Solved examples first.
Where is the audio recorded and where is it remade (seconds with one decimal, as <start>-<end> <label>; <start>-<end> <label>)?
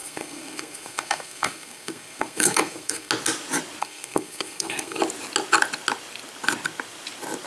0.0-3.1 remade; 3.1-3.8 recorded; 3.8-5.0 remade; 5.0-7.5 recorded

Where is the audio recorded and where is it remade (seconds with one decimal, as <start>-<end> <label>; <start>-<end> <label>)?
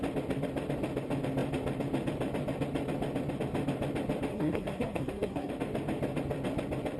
0.0-4.3 recorded; 4.3-5.5 remade; 5.5-7.0 recorded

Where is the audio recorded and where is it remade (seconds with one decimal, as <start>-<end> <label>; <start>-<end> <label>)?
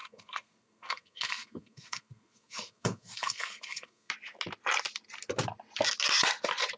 0.0-4.1 remade; 4.1-6.8 recorded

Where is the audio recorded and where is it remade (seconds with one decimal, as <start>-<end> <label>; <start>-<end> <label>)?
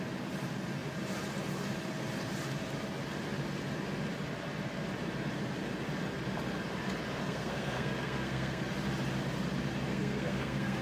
0.0-7.2 recorded; 7.2-8.6 remade; 8.6-9.9 recorded; 9.9-10.8 remade